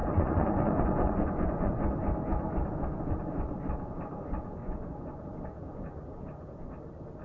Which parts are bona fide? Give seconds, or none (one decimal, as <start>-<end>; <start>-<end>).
1.7-4.6; 5.2-7.2